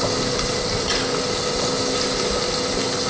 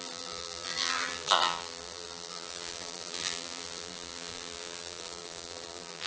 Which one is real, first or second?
first